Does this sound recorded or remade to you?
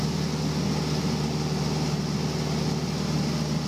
recorded